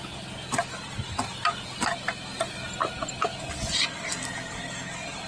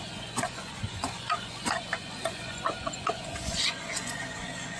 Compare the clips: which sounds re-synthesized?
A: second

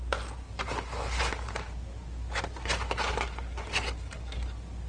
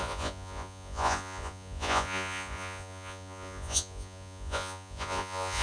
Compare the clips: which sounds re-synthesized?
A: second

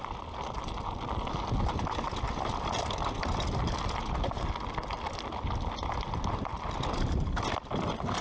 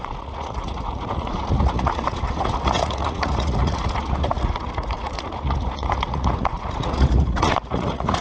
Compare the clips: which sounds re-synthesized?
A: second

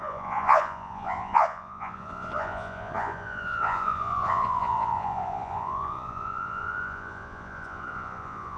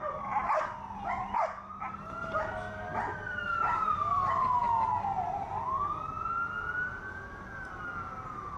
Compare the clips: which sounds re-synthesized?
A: first